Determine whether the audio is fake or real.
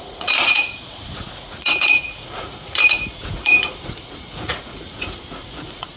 fake